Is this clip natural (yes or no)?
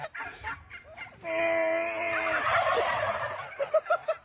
yes